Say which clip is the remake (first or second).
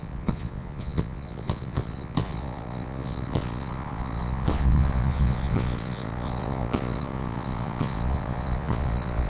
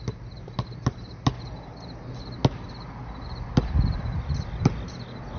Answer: first